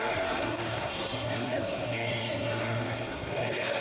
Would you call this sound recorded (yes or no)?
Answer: no